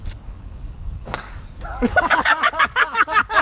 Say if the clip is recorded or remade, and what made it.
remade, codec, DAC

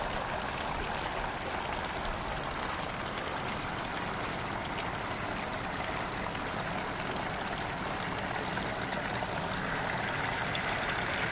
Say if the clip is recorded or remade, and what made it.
recorded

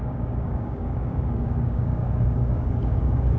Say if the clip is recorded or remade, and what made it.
remade, codec, DAC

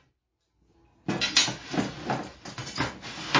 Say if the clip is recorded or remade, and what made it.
recorded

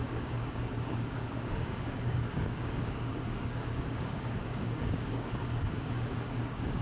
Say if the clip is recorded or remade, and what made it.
remade, codec, DAC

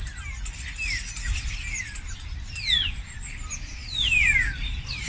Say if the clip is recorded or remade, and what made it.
recorded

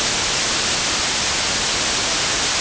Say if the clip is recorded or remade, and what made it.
recorded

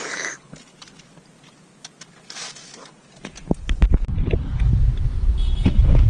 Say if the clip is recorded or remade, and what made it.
recorded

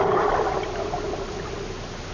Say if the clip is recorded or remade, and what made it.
recorded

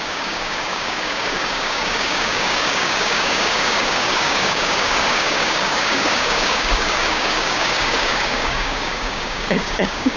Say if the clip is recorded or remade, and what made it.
remade, codec, DAC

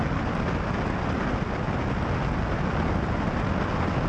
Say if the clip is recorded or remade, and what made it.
recorded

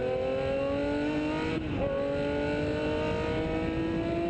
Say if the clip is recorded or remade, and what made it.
recorded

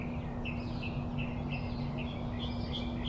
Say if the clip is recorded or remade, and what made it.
recorded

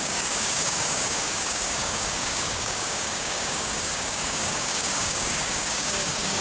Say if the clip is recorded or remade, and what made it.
remade, codec, DAC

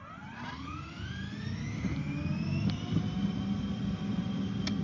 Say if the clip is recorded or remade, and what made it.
recorded